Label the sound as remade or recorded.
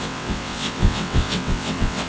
remade